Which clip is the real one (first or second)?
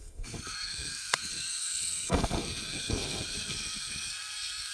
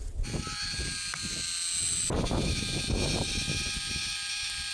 second